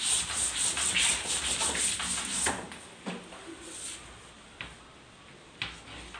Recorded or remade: recorded